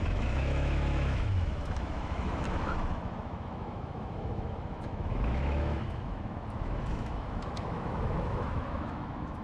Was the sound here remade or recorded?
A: remade